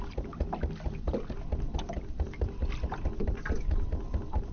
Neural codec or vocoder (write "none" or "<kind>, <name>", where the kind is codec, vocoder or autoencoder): none